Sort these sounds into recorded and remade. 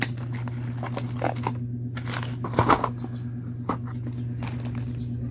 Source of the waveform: recorded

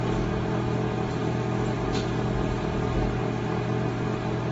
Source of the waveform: recorded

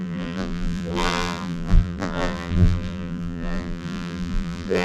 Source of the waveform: remade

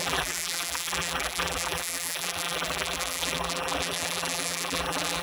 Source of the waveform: remade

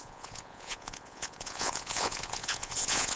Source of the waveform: remade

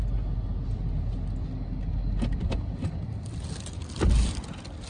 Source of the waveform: recorded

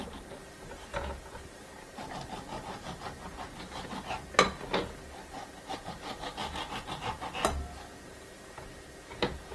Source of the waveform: recorded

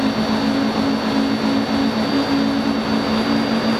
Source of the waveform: recorded